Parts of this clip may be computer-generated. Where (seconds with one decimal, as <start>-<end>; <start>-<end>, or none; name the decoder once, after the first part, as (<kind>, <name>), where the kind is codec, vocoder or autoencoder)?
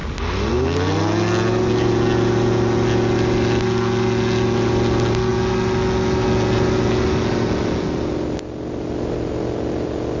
none